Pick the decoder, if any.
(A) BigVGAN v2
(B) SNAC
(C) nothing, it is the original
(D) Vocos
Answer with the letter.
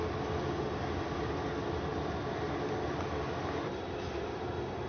C